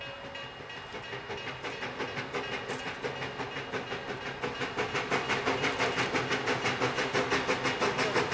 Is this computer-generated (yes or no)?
no